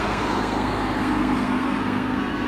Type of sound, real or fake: fake